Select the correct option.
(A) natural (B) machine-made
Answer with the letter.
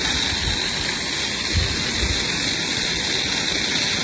A